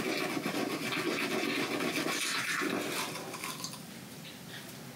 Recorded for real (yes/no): yes